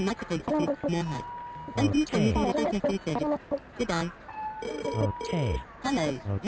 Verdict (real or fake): real